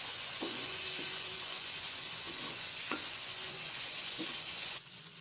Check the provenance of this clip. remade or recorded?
remade